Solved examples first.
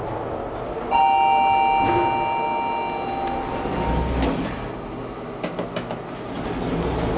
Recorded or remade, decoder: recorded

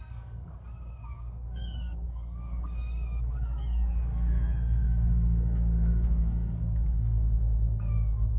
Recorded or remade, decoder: remade, codec, SNAC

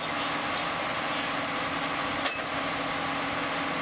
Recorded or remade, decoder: recorded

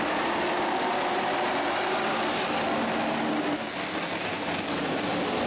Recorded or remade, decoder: recorded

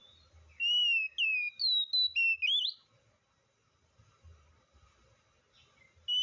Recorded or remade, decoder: recorded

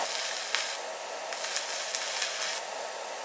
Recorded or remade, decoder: recorded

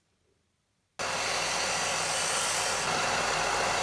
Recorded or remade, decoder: recorded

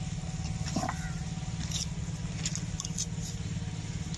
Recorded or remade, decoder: recorded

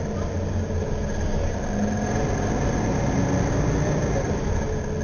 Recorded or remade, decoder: recorded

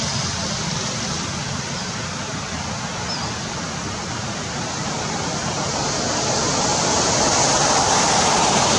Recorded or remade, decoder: recorded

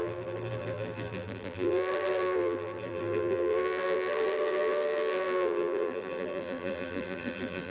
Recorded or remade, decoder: remade, vocoder, BigVGAN v2